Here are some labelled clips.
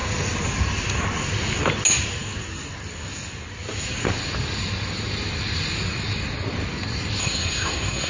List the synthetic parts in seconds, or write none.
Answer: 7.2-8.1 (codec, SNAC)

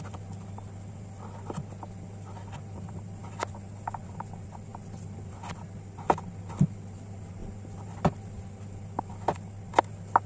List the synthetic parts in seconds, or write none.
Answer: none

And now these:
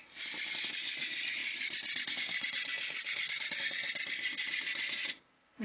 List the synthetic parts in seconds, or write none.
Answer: none

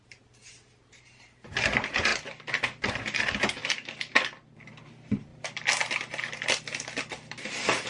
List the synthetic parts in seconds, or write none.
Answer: 0.0-2.1 (vocoder, BigVGAN v2); 2.9-3.6; 4.8-5.3

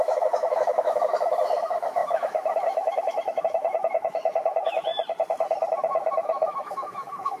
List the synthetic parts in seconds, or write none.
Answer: 0.0-4.9 (autoencoder, DAC-VAE); 5.7-7.4